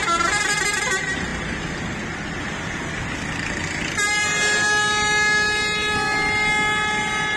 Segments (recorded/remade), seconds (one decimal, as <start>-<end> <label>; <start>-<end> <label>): 0.0-7.4 recorded